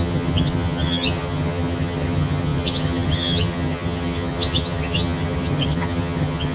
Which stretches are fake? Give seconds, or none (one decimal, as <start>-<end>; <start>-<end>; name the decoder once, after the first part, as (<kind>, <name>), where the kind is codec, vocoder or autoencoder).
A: 0.0-6.5 (vocoder, HiFi-GAN)